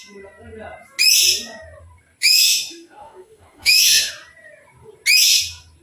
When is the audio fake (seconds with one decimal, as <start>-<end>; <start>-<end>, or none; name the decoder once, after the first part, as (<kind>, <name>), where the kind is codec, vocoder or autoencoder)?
2.2-4.1 (autoencoder, DAC-VAE)